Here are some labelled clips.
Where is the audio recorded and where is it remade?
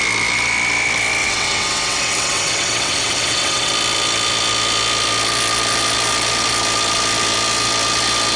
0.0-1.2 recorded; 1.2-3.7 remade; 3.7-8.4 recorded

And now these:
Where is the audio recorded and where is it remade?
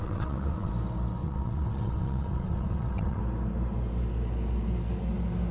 0.0-0.7 remade; 0.7-1.2 recorded; 1.2-3.2 remade; 3.2-5.5 recorded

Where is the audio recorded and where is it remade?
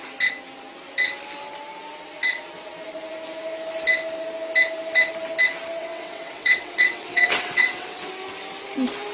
0.0-5.8 recorded; 5.8-8.1 remade; 8.1-9.1 recorded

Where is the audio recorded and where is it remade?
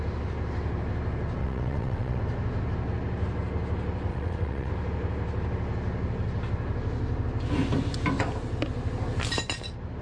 0.0-1.4 recorded; 1.4-2.2 remade; 2.2-4.1 recorded; 4.1-4.7 remade; 4.7-10.0 recorded